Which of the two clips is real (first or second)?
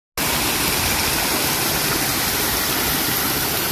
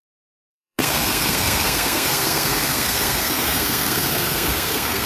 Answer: first